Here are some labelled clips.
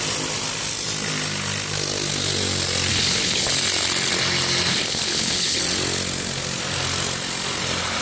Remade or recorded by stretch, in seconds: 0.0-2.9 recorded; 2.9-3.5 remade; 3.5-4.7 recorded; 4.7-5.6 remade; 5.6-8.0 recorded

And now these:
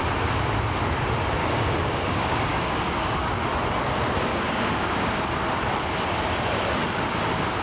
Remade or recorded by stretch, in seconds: 0.0-1.4 recorded; 1.4-3.3 remade; 3.3-4.3 recorded; 4.3-5.1 remade; 5.1-7.6 recorded

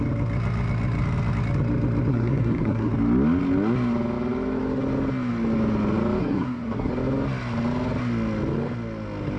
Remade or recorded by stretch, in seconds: 0.0-2.1 recorded; 2.1-2.9 remade; 2.9-6.2 recorded; 6.2-6.9 remade; 6.9-9.4 recorded

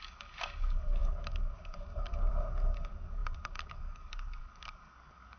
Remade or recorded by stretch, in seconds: 0.0-5.4 remade

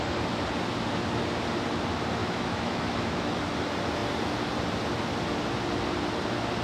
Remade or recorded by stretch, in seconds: 0.0-2.2 recorded; 2.2-3.4 remade; 3.4-6.6 recorded

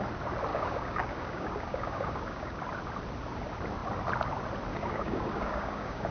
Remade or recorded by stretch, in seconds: 0.0-0.5 recorded; 0.5-2.6 remade; 2.6-4.7 recorded; 4.7-6.1 remade

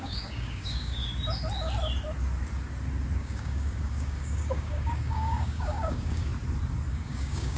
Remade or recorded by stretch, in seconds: 0.0-1.1 remade; 1.1-3.2 recorded; 3.2-6.3 remade; 6.3-6.9 recorded; 6.9-7.6 remade

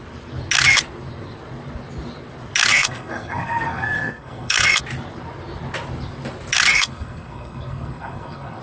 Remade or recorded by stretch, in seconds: 0.0-2.7 recorded; 2.7-4.8 remade; 4.8-6.7 recorded; 6.7-8.6 remade